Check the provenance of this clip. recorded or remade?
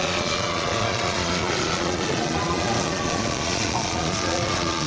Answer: remade